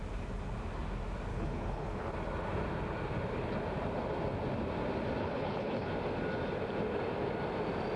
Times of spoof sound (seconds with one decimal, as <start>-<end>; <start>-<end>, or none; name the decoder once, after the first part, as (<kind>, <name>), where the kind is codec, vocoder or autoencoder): 1.3-2.1 (codec, HILCodec); 5.2-5.9